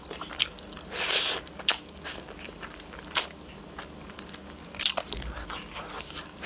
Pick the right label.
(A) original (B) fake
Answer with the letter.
A